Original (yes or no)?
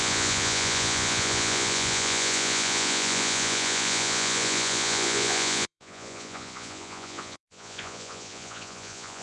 no